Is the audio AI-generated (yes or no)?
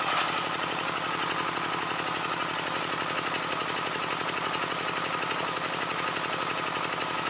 no